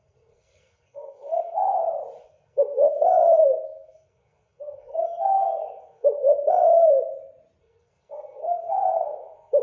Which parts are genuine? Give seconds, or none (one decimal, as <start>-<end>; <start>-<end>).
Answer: 1.6-2.2; 6.8-7.6